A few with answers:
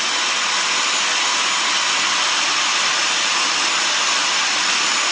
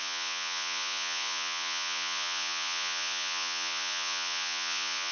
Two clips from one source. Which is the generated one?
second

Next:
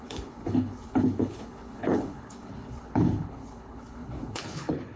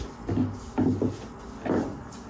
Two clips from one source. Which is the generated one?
first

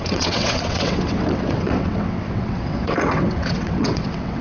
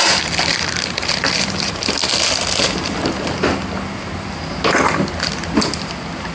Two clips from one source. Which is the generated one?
first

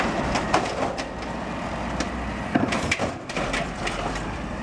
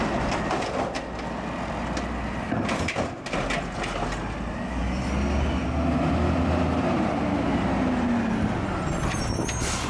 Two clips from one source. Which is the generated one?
first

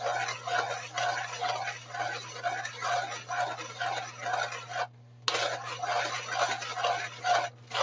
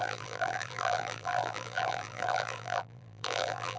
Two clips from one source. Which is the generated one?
second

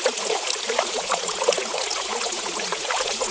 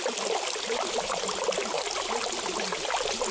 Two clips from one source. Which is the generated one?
first